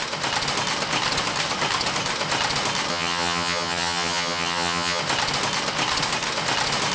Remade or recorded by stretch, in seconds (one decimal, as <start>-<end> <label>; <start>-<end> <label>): 0.0-2.9 recorded; 2.9-5.0 remade; 5.0-6.9 recorded